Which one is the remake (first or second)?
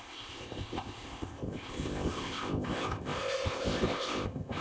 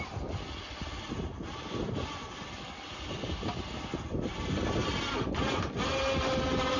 first